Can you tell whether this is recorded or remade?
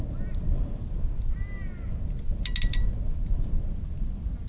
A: recorded